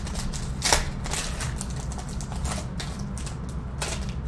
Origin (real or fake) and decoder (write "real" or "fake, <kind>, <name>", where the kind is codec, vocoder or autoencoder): real